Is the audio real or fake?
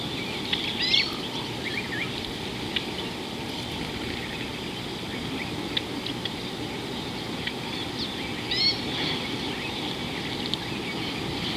real